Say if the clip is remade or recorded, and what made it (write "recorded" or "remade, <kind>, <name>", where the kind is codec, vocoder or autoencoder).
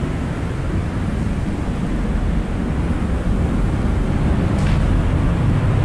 recorded